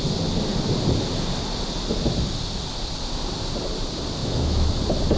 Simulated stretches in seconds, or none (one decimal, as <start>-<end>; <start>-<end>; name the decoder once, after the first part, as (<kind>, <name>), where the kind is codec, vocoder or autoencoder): 4.2-4.7 (autoencoder, DAC-VAE)